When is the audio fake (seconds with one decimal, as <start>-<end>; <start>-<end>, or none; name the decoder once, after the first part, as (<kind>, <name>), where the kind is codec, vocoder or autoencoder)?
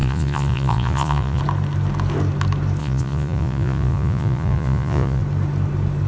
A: 0.0-1.4 (vocoder, Vocos); 2.8-5.2